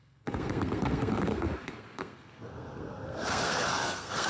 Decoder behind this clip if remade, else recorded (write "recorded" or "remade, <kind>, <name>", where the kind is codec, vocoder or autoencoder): remade, codec, SNAC